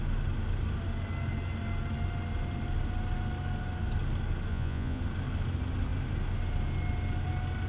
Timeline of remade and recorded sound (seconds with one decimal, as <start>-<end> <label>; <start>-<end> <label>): 0.0-4.5 recorded; 4.5-5.0 remade; 5.0-7.7 recorded